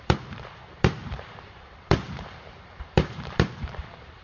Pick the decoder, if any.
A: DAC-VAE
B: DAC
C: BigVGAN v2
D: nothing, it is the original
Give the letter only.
C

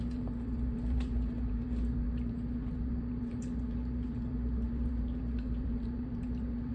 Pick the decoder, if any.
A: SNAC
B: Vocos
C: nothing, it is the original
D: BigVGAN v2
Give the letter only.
D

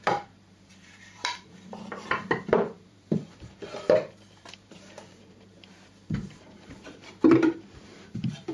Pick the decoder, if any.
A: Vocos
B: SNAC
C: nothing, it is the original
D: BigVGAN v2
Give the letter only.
D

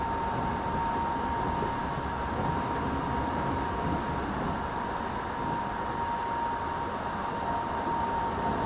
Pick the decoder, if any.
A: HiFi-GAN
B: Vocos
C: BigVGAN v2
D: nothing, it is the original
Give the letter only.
D